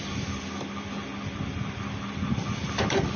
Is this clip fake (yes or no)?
no